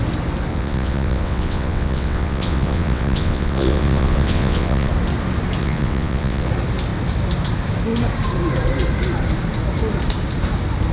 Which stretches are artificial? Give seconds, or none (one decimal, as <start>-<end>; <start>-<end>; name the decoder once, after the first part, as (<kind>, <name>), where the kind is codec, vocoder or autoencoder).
0.5-4.9 (vocoder, WaveNeXt); 5.6-6.5